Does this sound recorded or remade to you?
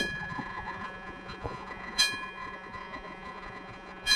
remade